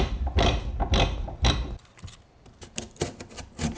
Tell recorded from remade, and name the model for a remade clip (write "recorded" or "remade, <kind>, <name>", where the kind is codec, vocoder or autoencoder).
recorded